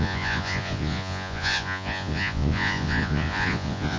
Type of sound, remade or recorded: remade